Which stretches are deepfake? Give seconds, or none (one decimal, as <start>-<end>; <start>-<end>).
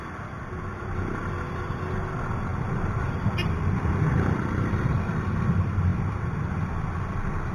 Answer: none